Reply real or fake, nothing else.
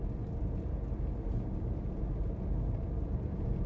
real